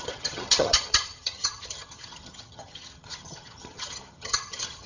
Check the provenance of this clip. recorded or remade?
remade